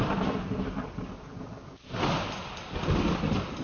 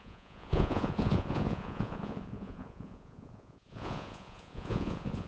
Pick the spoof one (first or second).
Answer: second